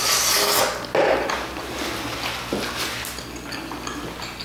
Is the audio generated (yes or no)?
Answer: no